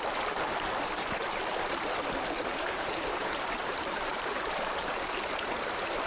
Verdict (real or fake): fake